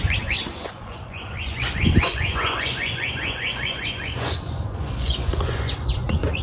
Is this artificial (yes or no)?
yes